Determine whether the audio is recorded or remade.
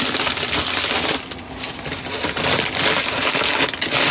recorded